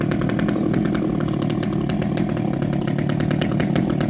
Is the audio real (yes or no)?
yes